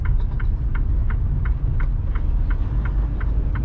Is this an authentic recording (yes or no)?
yes